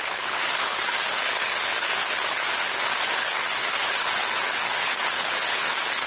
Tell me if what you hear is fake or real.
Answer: fake